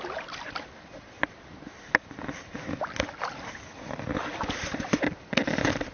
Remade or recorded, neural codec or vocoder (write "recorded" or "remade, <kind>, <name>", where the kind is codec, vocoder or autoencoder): recorded